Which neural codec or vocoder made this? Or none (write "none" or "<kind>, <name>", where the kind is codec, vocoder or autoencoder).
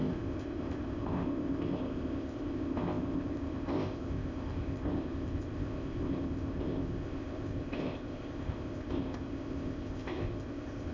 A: codec, ZipCodec